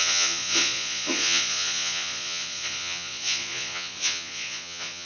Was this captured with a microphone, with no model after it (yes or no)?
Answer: no